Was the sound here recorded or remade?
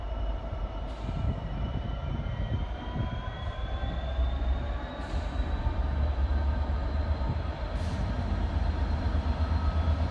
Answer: remade